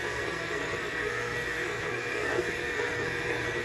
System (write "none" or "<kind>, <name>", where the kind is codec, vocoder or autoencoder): codec, SNAC